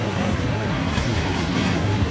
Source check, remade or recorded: remade